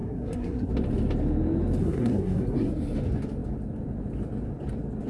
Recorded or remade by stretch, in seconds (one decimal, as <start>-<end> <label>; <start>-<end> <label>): 0.0-0.7 remade; 0.7-1.8 recorded; 1.8-2.7 remade; 2.7-5.1 recorded